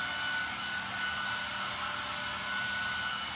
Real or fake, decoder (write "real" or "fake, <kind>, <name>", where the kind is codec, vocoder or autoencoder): real